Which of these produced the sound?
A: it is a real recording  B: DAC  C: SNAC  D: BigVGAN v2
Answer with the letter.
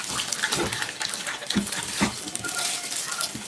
D